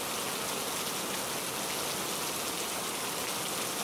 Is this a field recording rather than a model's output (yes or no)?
yes